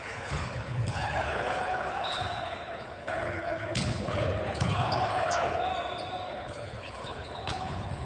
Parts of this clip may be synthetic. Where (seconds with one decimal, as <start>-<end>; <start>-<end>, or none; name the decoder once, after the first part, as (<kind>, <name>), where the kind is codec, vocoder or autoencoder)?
0.0-5.7 (codec, HILCodec); 6.3-8.1